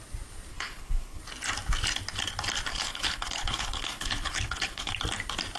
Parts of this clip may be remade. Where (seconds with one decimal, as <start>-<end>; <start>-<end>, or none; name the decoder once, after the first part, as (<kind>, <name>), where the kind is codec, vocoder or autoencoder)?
0.5-1.2 (codec, HILCodec); 2.7-4.9